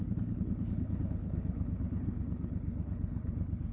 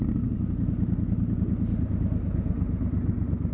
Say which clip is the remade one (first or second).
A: first